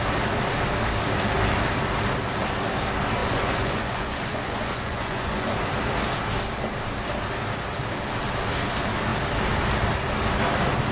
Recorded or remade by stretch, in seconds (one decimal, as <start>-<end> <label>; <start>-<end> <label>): 0.0-3.2 recorded; 3.2-5.5 remade; 5.5-10.9 recorded